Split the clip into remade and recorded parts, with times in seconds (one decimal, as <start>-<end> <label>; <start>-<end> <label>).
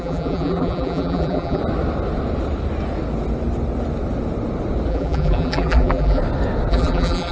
0.0-1.6 remade; 1.6-4.9 recorded; 4.9-6.2 remade; 6.2-6.7 recorded; 6.7-7.3 remade